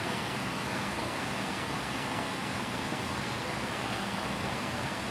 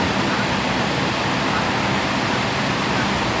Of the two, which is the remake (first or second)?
first